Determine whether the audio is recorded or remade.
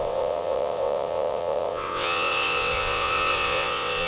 remade